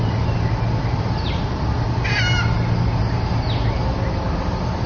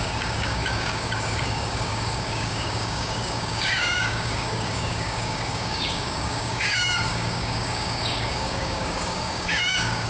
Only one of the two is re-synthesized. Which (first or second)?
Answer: second